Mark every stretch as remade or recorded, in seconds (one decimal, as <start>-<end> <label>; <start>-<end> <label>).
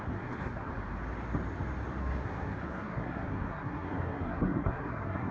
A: 0.0-0.7 remade; 0.7-2.0 recorded; 2.0-5.3 remade